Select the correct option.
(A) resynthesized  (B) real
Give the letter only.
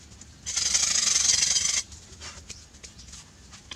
B